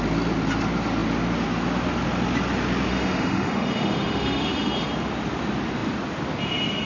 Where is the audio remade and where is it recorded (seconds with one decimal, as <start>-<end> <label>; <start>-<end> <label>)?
0.0-2.9 recorded; 2.9-4.9 remade; 4.9-6.8 recorded